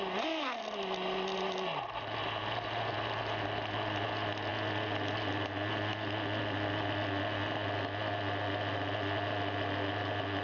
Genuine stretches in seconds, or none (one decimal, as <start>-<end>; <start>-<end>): 0.0-10.4